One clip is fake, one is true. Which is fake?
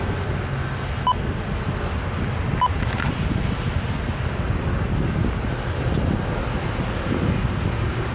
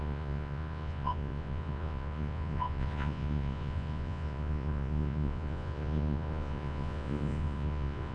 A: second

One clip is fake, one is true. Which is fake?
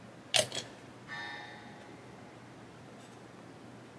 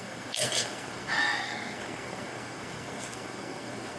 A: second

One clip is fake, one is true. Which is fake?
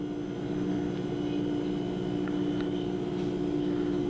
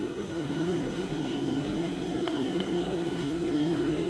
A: second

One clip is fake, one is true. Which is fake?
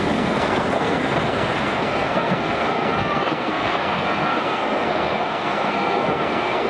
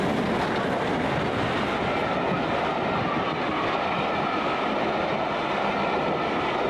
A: first